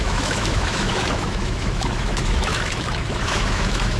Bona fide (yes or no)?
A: no